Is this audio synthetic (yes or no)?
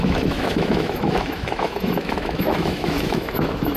yes